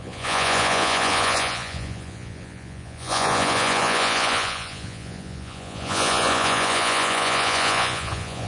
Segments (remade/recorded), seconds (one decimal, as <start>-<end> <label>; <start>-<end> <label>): 0.0-8.5 remade